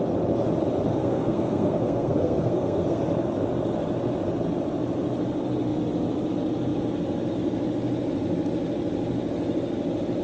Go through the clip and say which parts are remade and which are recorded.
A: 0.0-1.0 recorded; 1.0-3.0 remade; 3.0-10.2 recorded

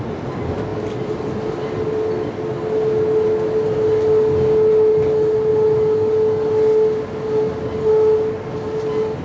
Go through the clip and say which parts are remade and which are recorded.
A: 0.0-9.2 recorded

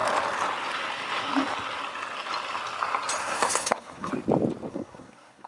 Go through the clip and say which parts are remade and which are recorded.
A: 0.0-3.2 recorded; 3.2-4.1 remade; 4.1-4.7 recorded; 4.7-5.5 remade